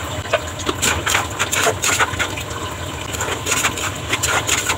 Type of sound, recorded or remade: recorded